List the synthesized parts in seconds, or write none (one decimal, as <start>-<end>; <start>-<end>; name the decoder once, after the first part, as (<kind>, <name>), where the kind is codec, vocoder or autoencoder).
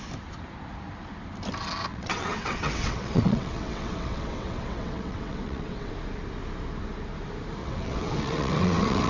1.9-5.9 (vocoder, WaveNeXt); 7.6-9.1